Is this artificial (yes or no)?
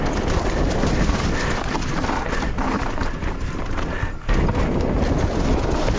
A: no